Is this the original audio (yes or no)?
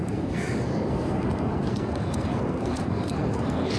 no